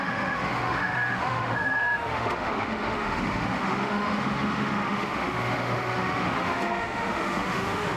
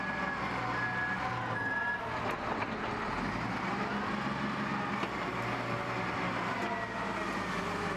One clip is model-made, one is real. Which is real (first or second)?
second